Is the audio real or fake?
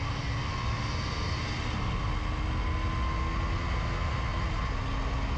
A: real